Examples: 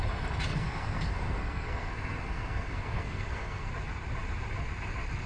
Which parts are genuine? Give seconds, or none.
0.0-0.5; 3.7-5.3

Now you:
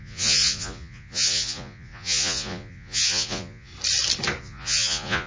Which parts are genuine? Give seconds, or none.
3.7-4.4

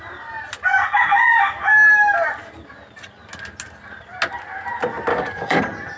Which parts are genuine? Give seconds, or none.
0.0-5.1; 5.6-6.0

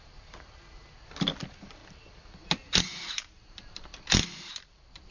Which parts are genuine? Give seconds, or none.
1.8-2.8; 3.9-4.5

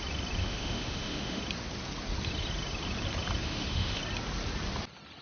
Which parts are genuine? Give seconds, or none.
0.0-0.4; 1.4-3.4; 4.0-5.2

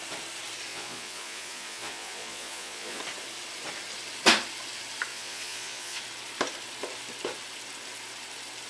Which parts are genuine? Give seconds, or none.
0.0-0.7; 3.0-5.1; 6.0-8.7

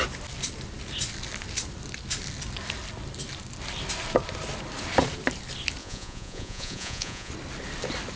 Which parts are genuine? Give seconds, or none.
0.0-5.8; 7.3-8.2

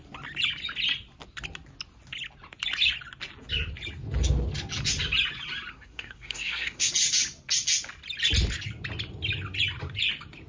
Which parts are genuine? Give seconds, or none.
0.0-5.7; 6.9-10.5